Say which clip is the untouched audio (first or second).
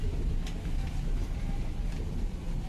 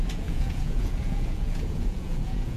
first